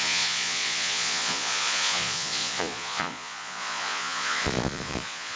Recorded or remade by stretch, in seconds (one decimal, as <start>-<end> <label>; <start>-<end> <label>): 0.0-5.4 remade